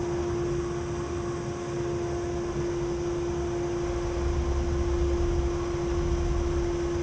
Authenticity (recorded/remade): recorded